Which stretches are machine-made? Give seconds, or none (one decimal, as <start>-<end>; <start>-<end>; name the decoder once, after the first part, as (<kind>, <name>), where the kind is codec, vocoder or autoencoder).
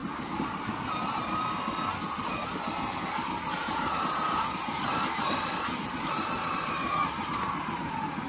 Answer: 0.0-0.8 (vocoder, BigVGAN v2); 3.6-7.9